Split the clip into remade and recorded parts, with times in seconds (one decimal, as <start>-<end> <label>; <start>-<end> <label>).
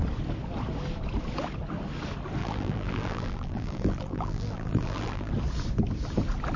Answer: 0.0-2.4 recorded; 2.4-5.3 remade; 5.3-6.6 recorded